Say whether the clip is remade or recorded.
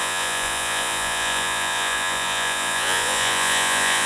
remade